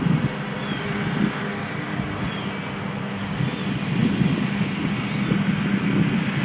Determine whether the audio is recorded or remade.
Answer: recorded